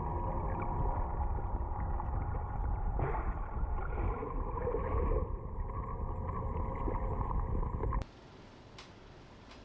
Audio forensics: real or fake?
real